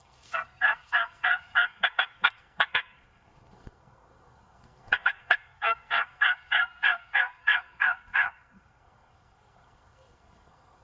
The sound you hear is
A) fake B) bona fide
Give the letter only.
A